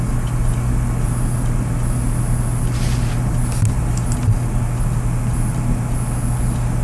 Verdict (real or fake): real